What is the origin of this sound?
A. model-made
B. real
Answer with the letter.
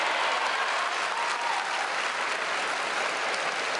B